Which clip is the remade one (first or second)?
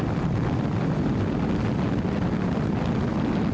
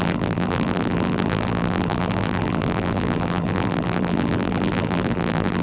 second